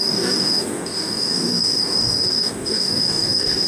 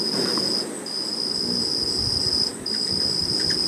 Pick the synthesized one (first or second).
first